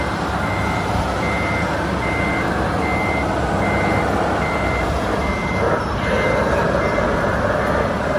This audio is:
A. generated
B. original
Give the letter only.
B